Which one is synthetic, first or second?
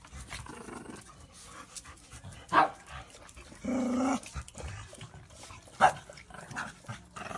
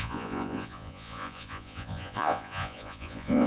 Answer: second